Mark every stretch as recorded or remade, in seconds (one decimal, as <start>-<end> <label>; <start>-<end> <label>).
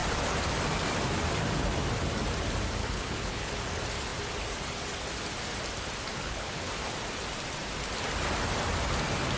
0.0-2.8 recorded; 2.8-3.5 remade; 3.5-6.1 recorded; 6.1-6.7 remade; 6.7-9.4 recorded